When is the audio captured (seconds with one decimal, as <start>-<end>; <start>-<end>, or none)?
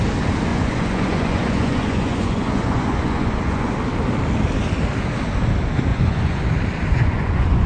0.0-0.5; 3.7-5.9; 6.4-6.9